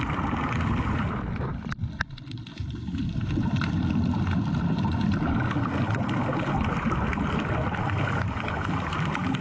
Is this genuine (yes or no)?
no